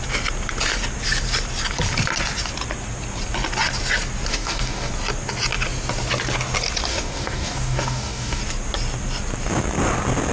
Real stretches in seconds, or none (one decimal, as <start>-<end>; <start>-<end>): 0.0-4.3; 4.9-6.9; 8.4-10.3